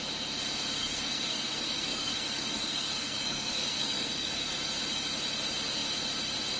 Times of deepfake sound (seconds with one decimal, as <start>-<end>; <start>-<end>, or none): 0.8-4.8